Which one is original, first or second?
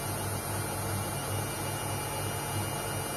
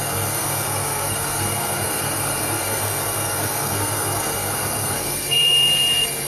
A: first